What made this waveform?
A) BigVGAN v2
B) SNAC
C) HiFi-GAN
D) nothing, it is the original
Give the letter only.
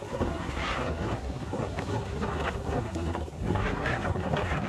B